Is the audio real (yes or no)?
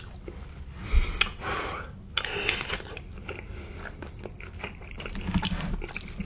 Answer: yes